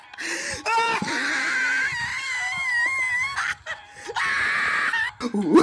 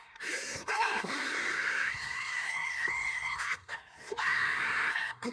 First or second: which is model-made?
second